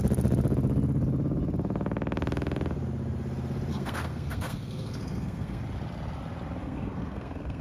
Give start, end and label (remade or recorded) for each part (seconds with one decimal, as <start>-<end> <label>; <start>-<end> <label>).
0.0-3.7 recorded; 3.7-5.6 remade; 5.6-6.6 recorded; 6.6-7.6 remade